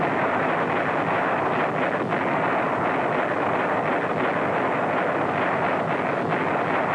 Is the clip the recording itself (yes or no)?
yes